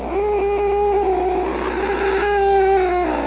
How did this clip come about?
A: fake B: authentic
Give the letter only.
B